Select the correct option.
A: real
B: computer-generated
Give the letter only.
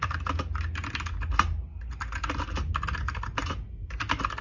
A